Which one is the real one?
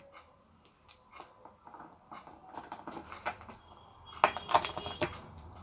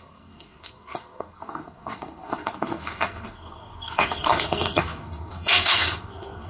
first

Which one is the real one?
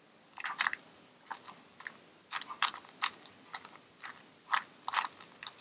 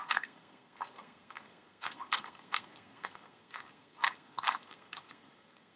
first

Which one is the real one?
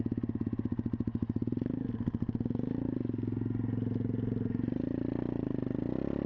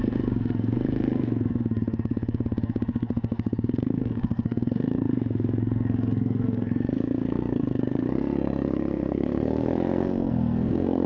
first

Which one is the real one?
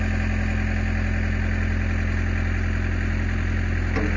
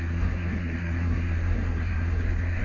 first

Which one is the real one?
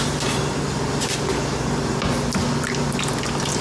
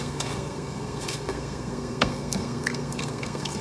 first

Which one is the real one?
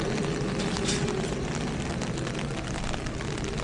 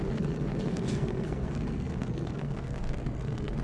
first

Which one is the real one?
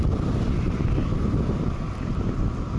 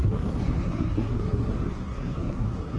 first